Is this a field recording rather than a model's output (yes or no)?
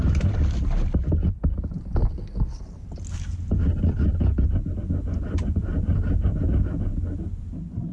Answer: yes